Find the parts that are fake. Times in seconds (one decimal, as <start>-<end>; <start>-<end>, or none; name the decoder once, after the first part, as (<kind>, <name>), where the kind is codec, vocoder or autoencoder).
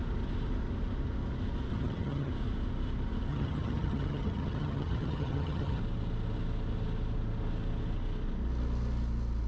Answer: 1.7-2.3 (vocoder, HiFi-GAN); 3.3-5.8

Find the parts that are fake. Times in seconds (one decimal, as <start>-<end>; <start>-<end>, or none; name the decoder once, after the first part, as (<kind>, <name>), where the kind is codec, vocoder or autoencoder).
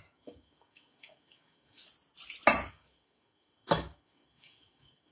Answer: 0.0-1.8 (autoencoder, DAC-VAE); 2.7-5.1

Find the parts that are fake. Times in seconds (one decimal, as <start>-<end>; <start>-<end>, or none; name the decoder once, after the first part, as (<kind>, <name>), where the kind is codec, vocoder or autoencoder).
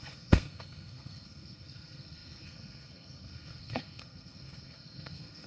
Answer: 0.0-5.5 (codec, SNAC)